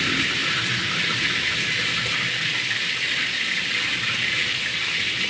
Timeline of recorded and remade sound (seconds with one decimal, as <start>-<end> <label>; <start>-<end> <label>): 0.0-0.4 remade; 0.4-3.6 recorded; 3.6-5.3 remade